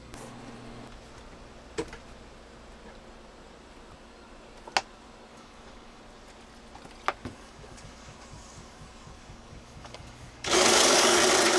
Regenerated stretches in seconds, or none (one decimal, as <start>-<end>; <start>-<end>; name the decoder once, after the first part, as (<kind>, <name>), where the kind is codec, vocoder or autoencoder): 5.3-6.0 (codec, DAC); 7.2-11.2